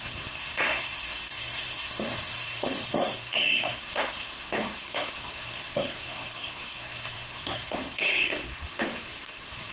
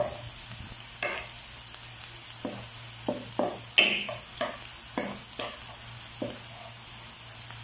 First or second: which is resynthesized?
first